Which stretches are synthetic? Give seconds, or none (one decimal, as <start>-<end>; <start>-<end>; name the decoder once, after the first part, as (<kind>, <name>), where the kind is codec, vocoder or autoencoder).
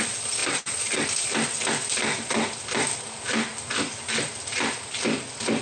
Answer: none